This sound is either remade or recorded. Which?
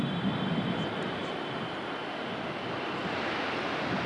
recorded